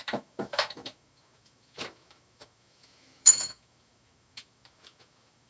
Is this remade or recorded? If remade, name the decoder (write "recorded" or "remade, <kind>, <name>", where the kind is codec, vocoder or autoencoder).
remade, autoencoder, DAC-VAE